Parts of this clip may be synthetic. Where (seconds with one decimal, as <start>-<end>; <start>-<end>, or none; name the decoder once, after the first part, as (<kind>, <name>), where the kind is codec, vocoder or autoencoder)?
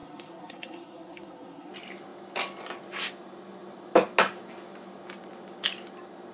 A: 0.0-1.7 (codec, SNAC)